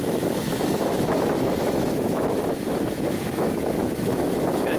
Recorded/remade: remade